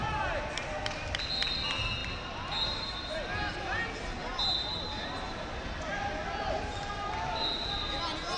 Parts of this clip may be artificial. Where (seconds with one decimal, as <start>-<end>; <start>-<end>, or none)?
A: none